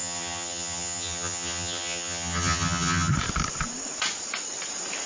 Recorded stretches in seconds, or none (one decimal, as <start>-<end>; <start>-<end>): 3.1-5.1